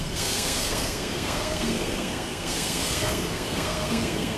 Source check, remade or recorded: remade